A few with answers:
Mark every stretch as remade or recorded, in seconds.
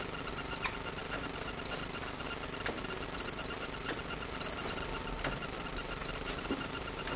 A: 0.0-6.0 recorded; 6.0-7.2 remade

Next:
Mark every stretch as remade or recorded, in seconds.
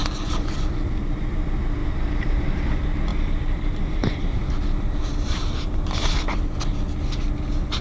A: 0.0-0.6 remade; 0.6-1.8 recorded; 1.8-2.6 remade; 2.6-3.1 recorded; 3.1-6.4 remade; 6.4-7.8 recorded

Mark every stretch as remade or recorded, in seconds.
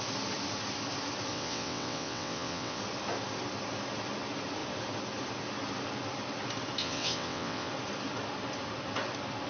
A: 0.0-1.3 recorded; 1.3-2.8 remade; 2.8-6.8 recorded; 6.8-7.7 remade; 7.7-9.5 recorded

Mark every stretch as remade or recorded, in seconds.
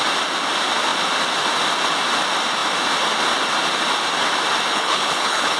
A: 0.0-4.7 recorded; 4.7-5.6 remade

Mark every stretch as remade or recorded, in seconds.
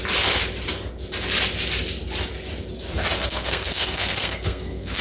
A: 0.0-3.2 recorded; 3.2-5.0 remade